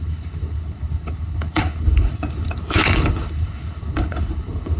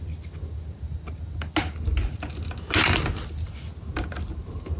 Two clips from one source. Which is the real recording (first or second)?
second